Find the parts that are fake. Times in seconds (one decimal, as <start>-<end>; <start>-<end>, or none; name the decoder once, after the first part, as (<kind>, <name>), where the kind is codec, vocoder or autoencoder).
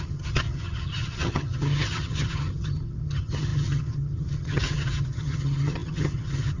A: 0.0-6.6 (vocoder, HiFi-GAN)